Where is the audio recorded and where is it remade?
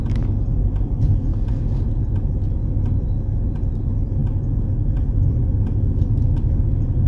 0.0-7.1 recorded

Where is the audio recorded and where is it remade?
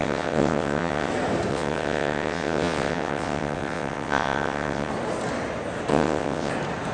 0.0-1.1 remade; 1.1-1.5 recorded; 1.5-4.9 remade; 4.9-5.9 recorded; 5.9-6.5 remade; 6.5-6.9 recorded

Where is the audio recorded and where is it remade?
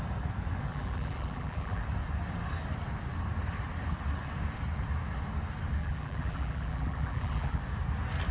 0.0-0.7 recorded; 0.7-1.8 remade; 1.8-5.8 recorded; 5.8-7.6 remade; 7.6-8.3 recorded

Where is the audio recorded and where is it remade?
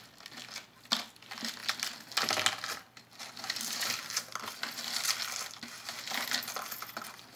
0.0-7.4 recorded